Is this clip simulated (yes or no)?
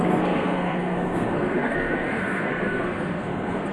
yes